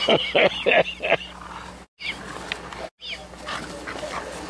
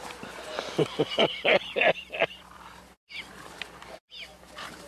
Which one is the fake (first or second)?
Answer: second